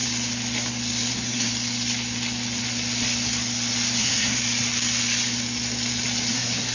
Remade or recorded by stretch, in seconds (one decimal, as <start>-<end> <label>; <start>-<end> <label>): 0.0-1.1 recorded; 1.1-1.5 remade; 1.5-4.0 recorded; 4.0-4.4 remade; 4.4-6.3 recorded; 6.3-6.7 remade